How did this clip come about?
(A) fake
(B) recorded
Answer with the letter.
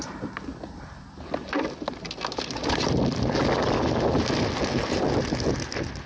B